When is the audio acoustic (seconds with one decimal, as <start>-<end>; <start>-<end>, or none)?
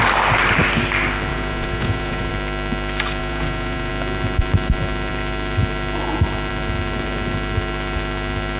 0.0-1.3; 2.3-3.2; 3.9-8.6